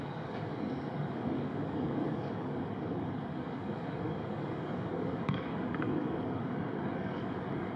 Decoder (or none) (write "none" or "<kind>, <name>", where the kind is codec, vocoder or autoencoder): codec, DAC